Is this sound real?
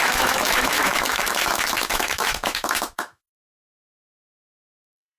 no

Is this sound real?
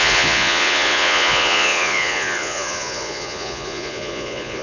no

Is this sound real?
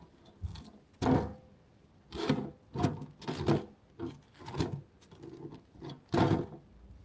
yes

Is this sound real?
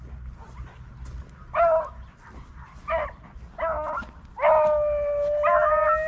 yes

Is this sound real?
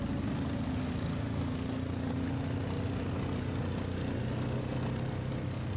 yes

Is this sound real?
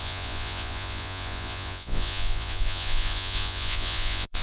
no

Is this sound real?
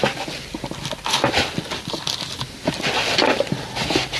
yes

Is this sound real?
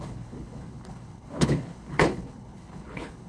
no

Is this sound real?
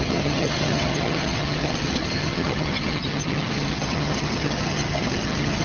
no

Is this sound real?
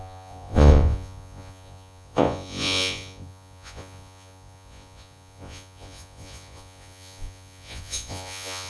no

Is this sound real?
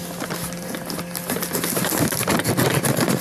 yes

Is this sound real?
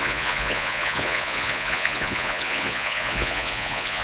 no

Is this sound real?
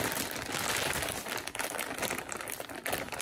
yes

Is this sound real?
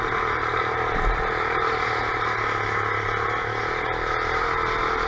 yes